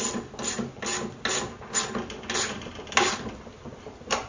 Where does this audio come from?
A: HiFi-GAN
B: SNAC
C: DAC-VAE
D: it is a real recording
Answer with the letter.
D